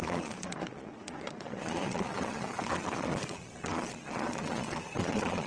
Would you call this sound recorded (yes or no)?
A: no